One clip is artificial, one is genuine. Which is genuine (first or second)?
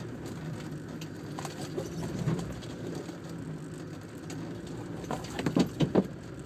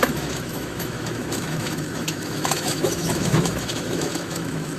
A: first